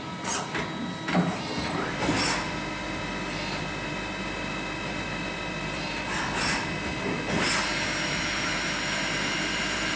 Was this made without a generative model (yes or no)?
yes